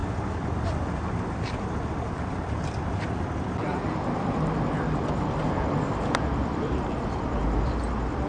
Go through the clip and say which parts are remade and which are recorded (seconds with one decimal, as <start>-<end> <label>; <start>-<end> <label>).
0.0-4.8 remade; 4.8-8.3 recorded